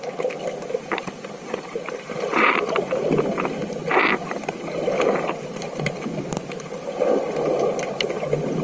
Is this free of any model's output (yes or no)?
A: yes